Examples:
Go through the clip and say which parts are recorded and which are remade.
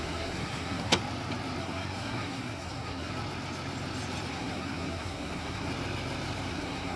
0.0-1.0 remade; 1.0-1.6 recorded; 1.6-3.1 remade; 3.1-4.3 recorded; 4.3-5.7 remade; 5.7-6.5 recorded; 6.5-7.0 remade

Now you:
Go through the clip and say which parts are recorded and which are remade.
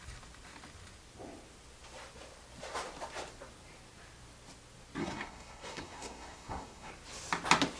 0.0-5.0 recorded; 5.0-6.9 remade; 6.9-7.8 recorded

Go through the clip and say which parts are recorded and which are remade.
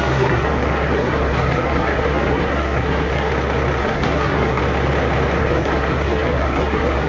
0.0-3.3 remade; 3.3-3.8 recorded; 3.8-4.6 remade; 4.6-5.4 recorded; 5.4-7.1 remade